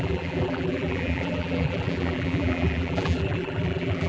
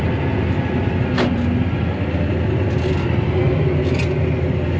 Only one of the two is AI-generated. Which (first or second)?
first